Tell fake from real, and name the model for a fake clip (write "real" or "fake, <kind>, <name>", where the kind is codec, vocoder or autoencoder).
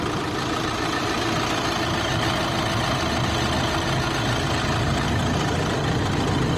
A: real